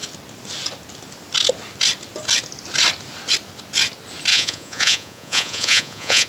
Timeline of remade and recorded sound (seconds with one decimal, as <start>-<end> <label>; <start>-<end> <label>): 0.0-4.3 recorded; 4.3-6.3 remade